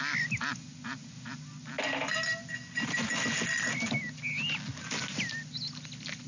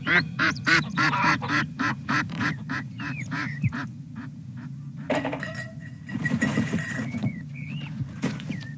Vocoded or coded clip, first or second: second